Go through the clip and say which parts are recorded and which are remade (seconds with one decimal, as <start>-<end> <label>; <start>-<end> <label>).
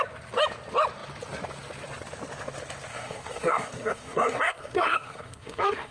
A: 0.0-2.9 recorded; 2.9-5.9 remade